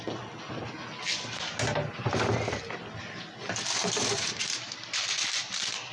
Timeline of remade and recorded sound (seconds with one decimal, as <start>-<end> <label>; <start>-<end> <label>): 0.0-3.8 recorded; 3.8-5.5 remade; 5.5-5.9 recorded